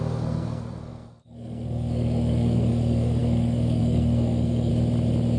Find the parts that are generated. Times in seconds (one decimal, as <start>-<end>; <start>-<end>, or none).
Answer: 0.0-4.7